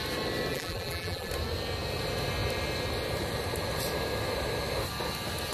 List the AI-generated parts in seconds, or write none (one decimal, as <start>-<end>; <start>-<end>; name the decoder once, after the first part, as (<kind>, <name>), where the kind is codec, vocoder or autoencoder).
0.5-1.3 (vocoder, BigVGAN v2)